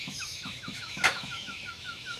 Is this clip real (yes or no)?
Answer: no